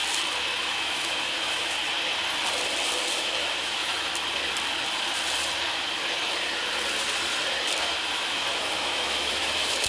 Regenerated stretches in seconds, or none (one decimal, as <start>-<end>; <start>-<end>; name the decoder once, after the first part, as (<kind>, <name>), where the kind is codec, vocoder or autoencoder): 0.6-1.8 (autoencoder, DAC-VAE); 3.2-4.1; 7.8-9.9